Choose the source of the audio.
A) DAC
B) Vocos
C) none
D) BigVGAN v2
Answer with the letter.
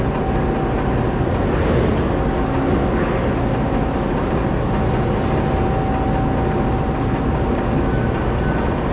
C